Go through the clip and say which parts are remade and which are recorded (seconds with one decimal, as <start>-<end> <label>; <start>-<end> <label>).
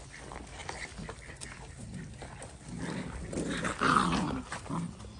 0.0-5.2 recorded